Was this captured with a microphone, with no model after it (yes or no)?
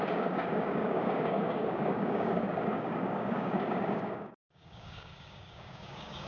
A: no